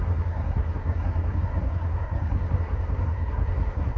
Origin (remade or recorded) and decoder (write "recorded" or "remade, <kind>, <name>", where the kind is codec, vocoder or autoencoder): remade, codec, SNAC